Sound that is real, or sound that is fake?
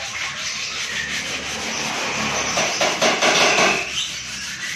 real